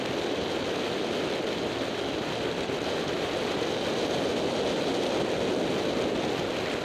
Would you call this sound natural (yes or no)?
yes